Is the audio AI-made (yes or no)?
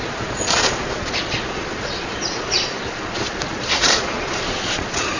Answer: yes